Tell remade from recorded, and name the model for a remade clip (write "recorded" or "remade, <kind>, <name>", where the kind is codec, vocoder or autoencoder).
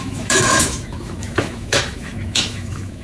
remade, autoencoder, DAC-VAE